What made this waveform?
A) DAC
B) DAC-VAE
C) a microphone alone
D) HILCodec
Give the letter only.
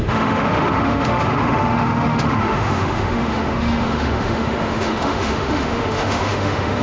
B